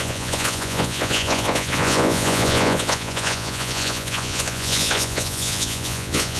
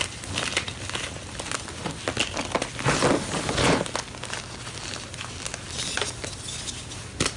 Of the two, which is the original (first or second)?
second